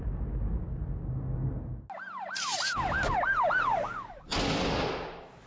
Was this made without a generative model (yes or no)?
yes